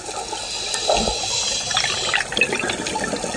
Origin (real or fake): real